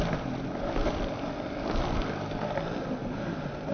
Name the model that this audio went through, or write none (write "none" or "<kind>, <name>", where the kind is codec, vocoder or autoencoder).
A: none